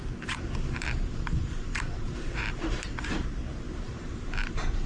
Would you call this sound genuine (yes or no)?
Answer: no